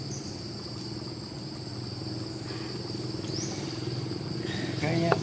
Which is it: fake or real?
real